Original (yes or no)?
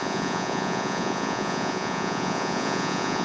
no